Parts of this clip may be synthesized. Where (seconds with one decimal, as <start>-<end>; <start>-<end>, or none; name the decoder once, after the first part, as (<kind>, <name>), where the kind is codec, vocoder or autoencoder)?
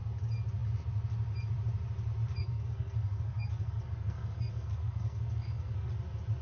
2.4-5.9 (codec, SNAC)